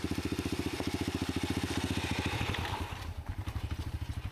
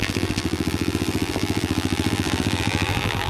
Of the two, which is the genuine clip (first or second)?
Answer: first